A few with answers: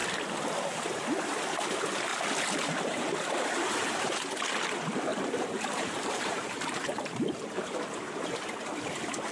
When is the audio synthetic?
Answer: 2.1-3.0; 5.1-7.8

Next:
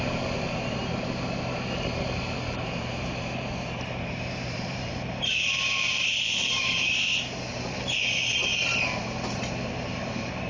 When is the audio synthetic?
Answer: 0.0-0.8; 1.8-8.4; 9.0-10.5

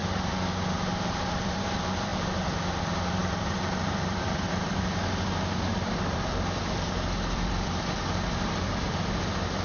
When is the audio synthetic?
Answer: 0.7-9.6

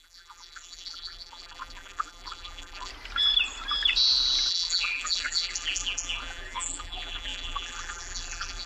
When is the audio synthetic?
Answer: 0.0-2.9; 4.5-8.7

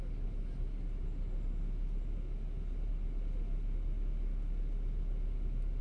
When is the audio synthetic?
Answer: none